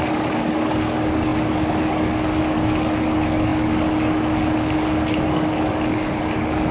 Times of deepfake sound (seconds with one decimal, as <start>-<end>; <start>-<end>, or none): 0.0-6.7

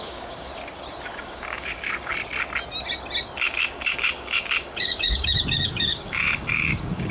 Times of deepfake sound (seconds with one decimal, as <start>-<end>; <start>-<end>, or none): 0.0-0.5; 1.1-2.1; 3.4-7.1